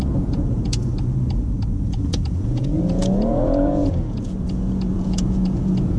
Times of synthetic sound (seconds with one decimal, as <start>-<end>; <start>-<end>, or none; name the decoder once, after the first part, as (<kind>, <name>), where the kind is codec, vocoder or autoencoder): 0.0-0.9 (vocoder, Vocos); 1.8-6.0